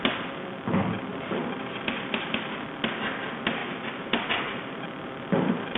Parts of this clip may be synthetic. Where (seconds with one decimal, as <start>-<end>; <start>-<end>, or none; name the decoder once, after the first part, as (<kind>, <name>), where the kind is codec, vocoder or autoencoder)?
1.1-1.8 (vocoder, BigVGAN v2); 3.6-5.8